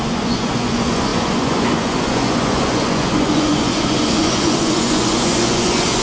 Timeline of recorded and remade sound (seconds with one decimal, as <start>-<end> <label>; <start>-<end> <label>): 0.0-6.0 remade